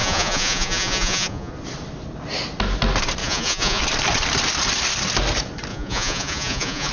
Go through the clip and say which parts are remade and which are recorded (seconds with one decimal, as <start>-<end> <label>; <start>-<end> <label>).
0.0-1.5 remade; 1.5-3.2 recorded; 3.2-3.8 remade; 3.8-5.7 recorded; 5.7-6.9 remade